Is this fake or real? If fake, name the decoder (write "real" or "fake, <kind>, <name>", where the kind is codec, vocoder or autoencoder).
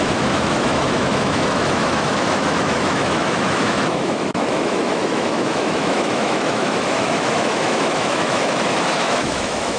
fake, autoencoder, DAC-VAE